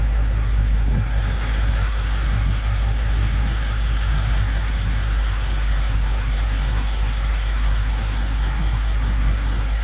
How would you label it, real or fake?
fake